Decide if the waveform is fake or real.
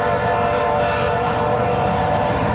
fake